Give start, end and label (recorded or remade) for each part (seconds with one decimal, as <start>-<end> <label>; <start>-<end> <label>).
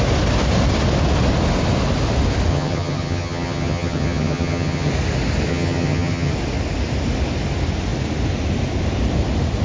0.0-2.5 recorded; 2.5-4.9 remade; 4.9-5.5 recorded; 5.5-6.3 remade; 6.3-9.6 recorded